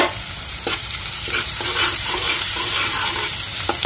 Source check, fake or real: fake